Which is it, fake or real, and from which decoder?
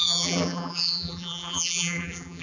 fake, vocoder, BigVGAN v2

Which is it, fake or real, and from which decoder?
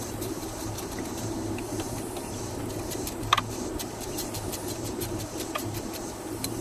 fake, vocoder, BigVGAN v2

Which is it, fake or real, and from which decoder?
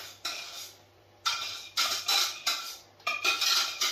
real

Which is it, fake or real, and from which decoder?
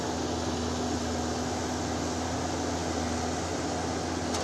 real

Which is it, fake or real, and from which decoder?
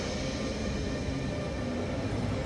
real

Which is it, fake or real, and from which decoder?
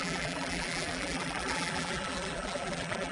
fake, vocoder, BigVGAN v2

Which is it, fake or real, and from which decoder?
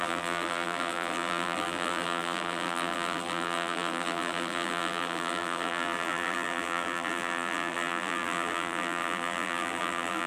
fake, vocoder, BigVGAN v2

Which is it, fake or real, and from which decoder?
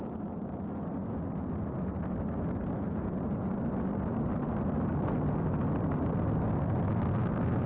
real